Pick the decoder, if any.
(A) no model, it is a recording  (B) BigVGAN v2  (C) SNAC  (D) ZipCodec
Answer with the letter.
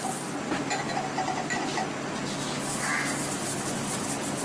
A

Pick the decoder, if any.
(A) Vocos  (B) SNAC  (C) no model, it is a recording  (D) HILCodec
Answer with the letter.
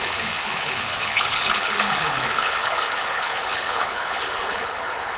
D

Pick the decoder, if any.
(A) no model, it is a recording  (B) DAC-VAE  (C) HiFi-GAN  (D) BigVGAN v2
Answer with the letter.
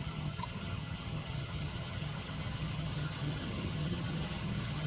C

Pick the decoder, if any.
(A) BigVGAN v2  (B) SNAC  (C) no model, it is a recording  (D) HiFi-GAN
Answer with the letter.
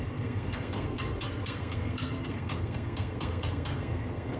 B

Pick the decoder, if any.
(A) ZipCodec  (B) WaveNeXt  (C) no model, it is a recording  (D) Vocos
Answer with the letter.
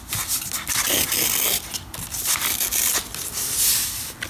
C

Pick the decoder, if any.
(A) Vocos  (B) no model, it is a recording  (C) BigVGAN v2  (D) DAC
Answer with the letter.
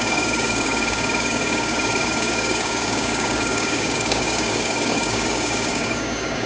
D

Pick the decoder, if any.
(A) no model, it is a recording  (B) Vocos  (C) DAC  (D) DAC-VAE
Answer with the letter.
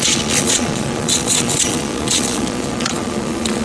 B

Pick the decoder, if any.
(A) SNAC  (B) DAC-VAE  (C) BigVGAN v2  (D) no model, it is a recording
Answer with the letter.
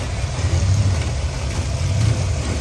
D